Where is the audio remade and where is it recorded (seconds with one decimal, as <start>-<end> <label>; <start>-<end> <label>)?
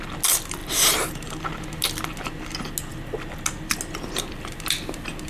0.0-5.3 recorded